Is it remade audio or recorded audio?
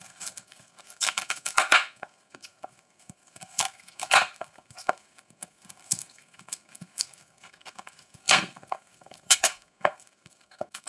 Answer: remade